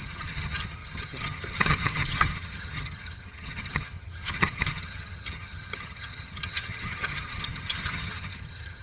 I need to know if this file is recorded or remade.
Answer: remade